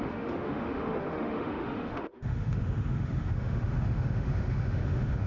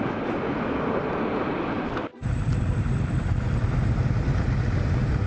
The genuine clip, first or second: second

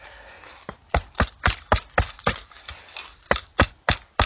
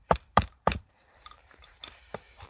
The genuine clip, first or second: first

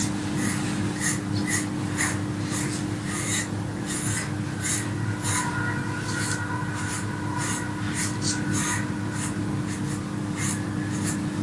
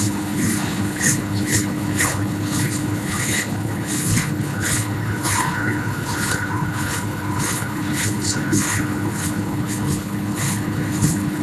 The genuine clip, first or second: first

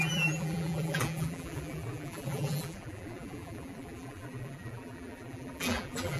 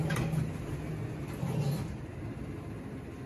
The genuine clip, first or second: second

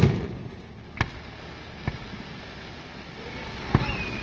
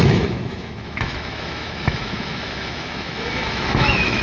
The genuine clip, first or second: first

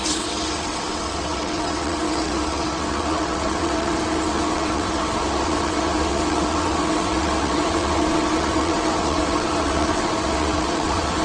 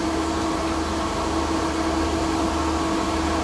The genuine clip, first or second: second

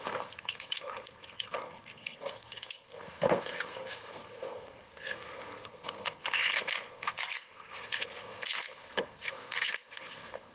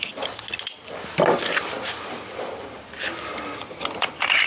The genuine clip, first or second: second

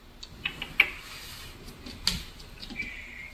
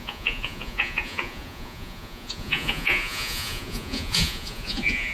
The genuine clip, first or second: first